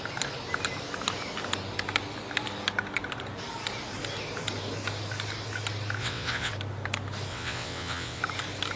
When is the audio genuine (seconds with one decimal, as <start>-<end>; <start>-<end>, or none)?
0.0-6.0; 6.5-7.3; 8.2-8.8